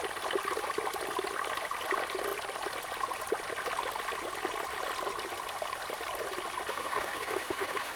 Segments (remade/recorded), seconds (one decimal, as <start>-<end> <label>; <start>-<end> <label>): 0.0-6.7 recorded; 6.7-8.0 remade